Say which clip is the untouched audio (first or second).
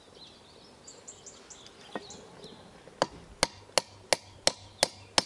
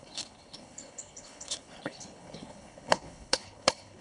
first